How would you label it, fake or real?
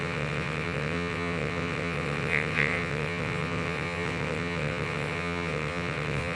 fake